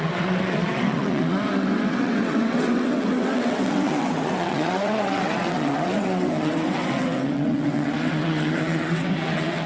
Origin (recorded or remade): remade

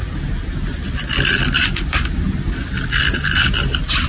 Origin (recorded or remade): recorded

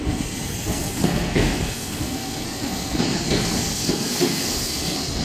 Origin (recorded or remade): remade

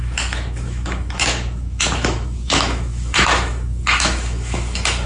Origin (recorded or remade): remade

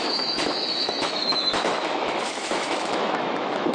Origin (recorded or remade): remade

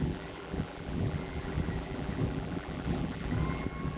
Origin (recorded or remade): remade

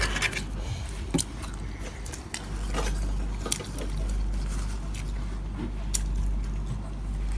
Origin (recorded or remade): recorded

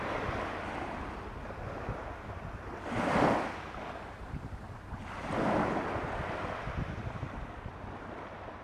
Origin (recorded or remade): recorded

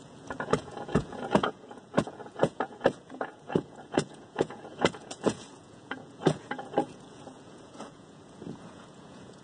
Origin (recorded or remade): remade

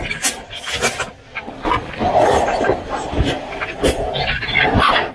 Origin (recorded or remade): recorded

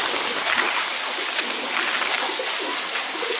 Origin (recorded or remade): recorded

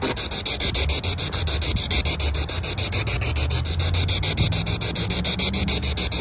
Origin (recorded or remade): recorded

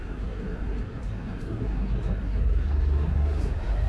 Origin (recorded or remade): remade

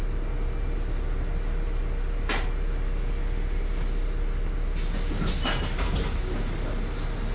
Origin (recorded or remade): recorded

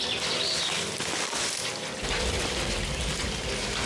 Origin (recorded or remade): recorded